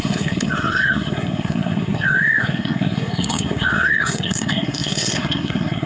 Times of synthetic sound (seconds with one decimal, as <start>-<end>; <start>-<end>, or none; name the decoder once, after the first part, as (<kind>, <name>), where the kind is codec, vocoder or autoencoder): 0.0-5.9 (codec, SNAC)